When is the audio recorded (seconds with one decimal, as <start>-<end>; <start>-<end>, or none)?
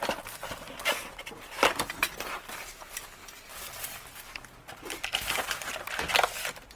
0.0-3.2; 5.9-6.8